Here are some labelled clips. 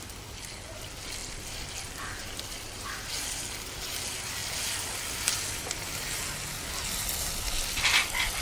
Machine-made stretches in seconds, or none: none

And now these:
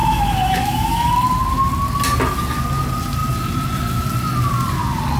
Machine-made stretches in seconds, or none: 0.0-1.1 (autoencoder, DAC-VAE)

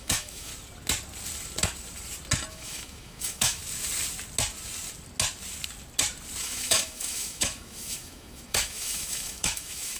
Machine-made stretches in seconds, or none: 0.0-0.5 (autoencoder, DAC-VAE); 2.5-3.6; 6.4-10.0